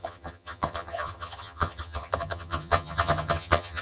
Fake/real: fake